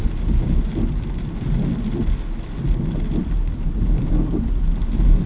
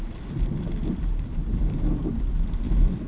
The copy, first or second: second